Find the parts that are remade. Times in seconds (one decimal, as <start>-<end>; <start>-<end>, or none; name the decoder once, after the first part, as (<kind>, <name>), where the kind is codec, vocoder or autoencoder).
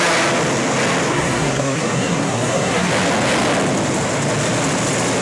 1.1-2.9 (codec, SNAC)